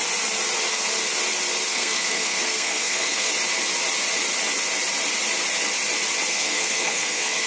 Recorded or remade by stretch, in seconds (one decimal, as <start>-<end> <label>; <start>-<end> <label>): 0.0-1.7 recorded; 1.7-3.3 remade; 3.3-6.3 recorded; 6.3-7.5 remade